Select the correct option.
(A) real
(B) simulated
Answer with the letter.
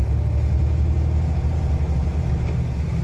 A